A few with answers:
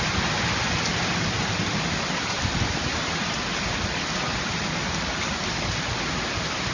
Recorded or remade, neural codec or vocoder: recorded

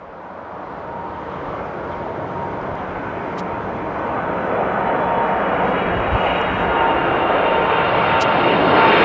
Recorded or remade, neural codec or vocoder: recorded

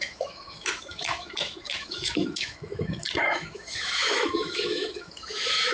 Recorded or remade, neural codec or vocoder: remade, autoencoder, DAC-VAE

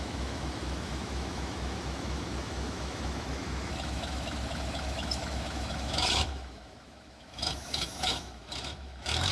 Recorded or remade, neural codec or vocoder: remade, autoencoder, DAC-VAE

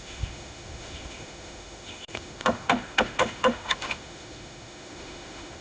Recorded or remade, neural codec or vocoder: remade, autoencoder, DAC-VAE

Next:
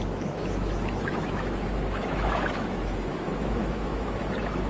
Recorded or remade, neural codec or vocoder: remade, autoencoder, DAC-VAE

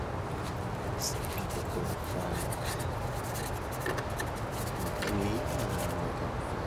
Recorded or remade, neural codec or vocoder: recorded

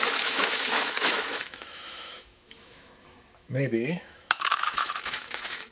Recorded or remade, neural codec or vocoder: remade, autoencoder, DAC-VAE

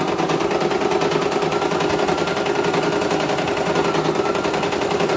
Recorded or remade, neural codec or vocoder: recorded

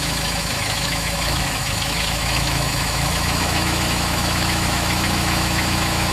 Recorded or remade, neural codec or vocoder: remade, autoencoder, DAC-VAE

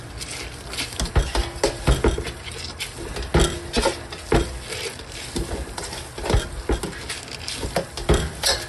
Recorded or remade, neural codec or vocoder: recorded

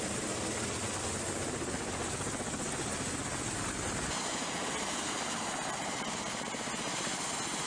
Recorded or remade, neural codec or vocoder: recorded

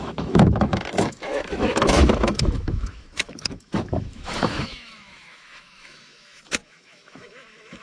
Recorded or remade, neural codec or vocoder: remade, autoencoder, DAC-VAE